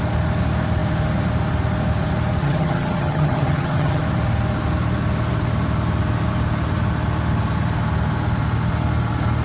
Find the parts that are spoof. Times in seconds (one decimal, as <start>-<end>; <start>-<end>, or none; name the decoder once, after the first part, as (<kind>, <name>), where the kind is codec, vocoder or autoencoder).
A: 2.4-4.0 (vocoder, HiFi-GAN)